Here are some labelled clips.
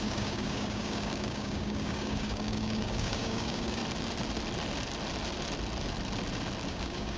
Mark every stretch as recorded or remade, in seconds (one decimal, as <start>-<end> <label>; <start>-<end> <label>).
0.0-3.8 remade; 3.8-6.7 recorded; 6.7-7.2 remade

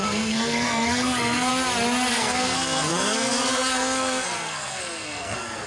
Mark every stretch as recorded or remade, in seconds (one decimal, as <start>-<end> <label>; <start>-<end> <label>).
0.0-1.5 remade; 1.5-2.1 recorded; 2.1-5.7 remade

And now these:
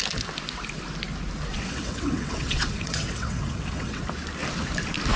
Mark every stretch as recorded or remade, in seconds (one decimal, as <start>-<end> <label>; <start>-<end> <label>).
0.0-1.5 recorded; 1.5-4.0 remade; 4.0-5.2 recorded

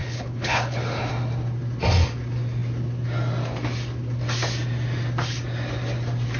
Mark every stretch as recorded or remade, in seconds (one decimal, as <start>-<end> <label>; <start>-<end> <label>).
0.0-1.1 remade; 1.1-6.4 recorded

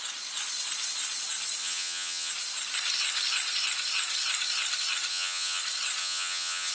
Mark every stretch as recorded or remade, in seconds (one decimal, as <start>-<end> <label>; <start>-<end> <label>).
0.0-1.6 recorded; 1.6-2.3 remade; 2.3-5.1 recorded; 5.1-5.6 remade; 5.6-6.0 recorded; 6.0-6.7 remade

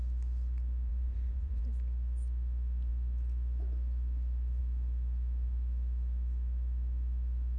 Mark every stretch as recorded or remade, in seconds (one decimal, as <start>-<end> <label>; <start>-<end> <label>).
0.0-0.9 recorded; 0.9-1.6 remade; 1.6-7.6 recorded

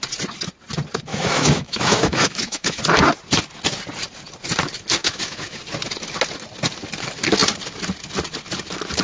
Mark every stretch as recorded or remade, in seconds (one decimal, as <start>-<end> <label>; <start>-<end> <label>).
0.0-1.1 recorded; 1.1-2.8 remade; 2.8-5.0 recorded; 5.0-5.6 remade; 5.6-9.0 recorded

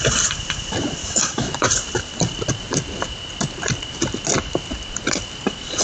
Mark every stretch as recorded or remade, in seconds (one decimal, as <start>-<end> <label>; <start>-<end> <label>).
0.0-1.0 recorded; 1.0-1.7 remade; 1.7-5.8 recorded